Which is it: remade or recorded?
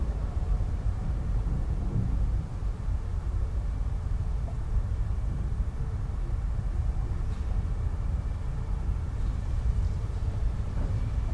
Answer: remade